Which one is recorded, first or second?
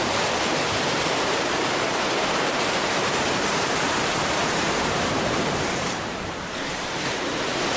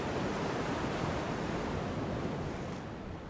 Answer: second